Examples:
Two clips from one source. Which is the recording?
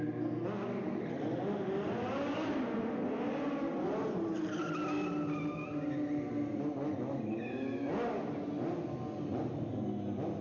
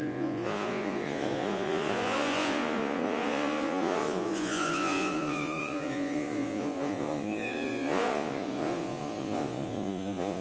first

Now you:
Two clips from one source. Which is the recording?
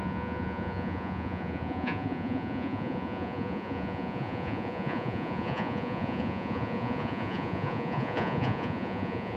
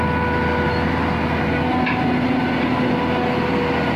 second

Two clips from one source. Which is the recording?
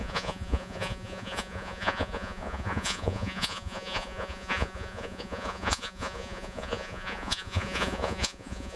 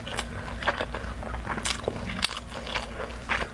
second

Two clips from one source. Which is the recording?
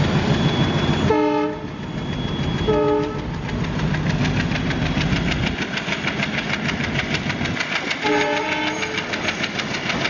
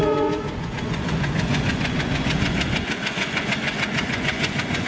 first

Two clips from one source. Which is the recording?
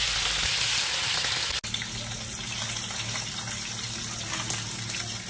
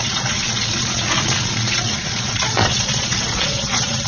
first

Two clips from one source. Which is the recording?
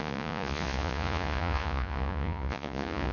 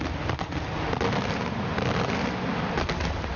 second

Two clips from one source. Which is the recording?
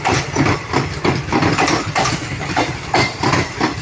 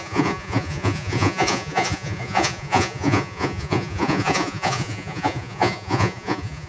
first